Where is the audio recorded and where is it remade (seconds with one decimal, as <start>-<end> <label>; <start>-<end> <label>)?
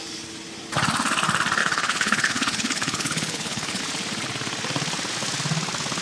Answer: 0.0-1.6 recorded; 1.6-3.8 remade; 3.8-6.0 recorded